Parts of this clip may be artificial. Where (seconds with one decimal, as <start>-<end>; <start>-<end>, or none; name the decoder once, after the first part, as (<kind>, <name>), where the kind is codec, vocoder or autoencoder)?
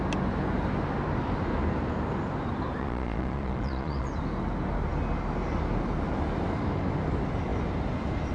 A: 2.8-4.1 (vocoder, Vocos)